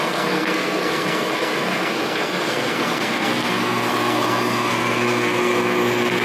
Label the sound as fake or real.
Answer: fake